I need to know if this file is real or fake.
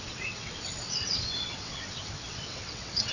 fake